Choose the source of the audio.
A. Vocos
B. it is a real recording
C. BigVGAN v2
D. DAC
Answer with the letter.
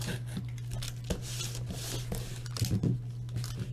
B